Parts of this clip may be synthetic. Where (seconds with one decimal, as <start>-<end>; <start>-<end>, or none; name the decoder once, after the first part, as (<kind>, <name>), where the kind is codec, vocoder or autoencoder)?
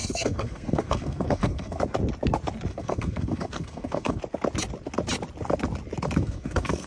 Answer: 0.0-1.8 (codec, SNAC); 2.7-4.2; 6.2-6.9